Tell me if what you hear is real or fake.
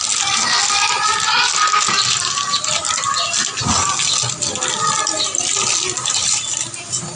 real